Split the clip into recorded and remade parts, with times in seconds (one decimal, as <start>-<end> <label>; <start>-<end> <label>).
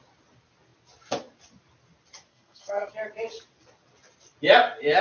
0.0-2.3 recorded; 2.3-2.9 remade; 2.9-5.0 recorded